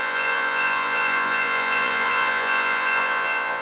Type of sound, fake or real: fake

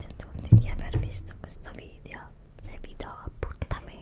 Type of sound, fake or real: real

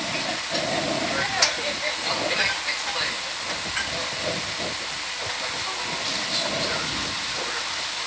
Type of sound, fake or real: real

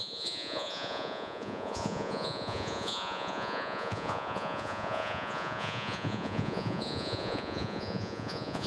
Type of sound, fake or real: fake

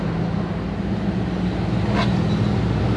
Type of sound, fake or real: real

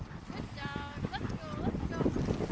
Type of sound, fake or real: real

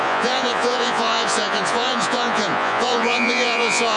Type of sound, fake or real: fake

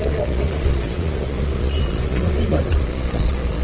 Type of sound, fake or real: fake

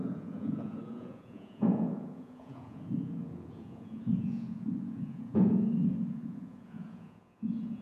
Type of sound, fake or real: fake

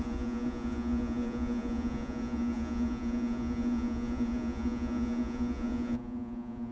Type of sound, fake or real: fake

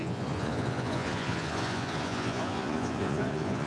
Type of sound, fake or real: fake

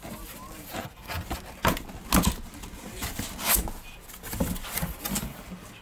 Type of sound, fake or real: real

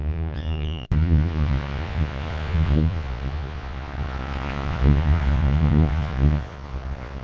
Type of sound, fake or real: fake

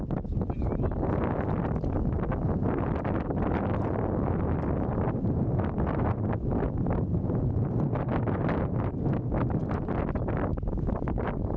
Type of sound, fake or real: real